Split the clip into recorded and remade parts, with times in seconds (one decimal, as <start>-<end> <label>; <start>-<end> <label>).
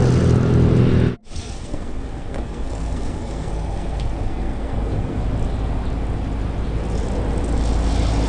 0.0-1.2 recorded; 1.2-5.2 remade; 5.2-8.3 recorded